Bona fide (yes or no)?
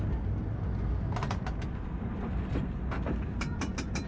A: yes